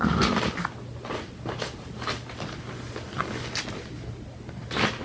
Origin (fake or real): real